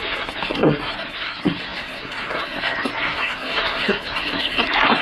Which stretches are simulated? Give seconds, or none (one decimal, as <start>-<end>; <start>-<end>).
0.0-5.0